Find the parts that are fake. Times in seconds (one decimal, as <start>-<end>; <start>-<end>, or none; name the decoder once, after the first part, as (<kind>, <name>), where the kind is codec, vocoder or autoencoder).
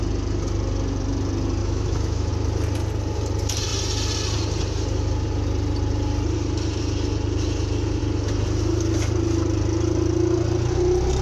1.6-2.3 (autoencoder, DAC-VAE)